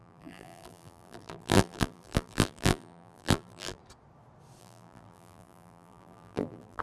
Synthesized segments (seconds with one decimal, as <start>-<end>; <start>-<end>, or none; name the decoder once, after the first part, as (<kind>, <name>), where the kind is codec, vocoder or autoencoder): 0.0-3.8 (vocoder, BigVGAN v2); 4.6-6.8